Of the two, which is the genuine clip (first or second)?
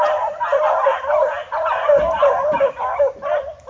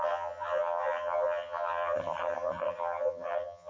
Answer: first